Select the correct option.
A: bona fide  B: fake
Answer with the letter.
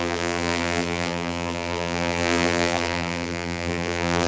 B